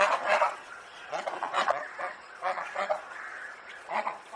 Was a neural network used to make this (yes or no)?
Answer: yes